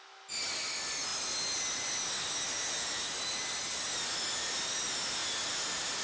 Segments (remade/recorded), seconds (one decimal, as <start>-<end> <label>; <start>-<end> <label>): 0.0-6.0 recorded